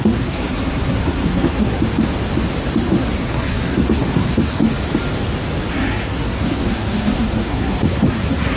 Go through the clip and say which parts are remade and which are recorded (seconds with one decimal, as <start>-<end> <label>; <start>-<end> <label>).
0.0-1.8 remade; 1.8-2.8 recorded; 2.8-4.6 remade; 4.6-5.7 recorded; 5.7-8.6 remade